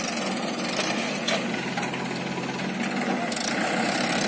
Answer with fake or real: real